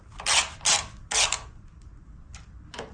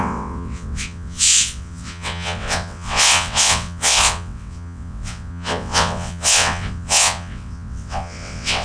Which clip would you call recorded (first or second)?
first